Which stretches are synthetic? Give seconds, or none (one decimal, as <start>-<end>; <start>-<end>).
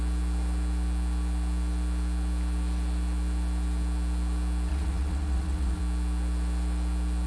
4.7-5.8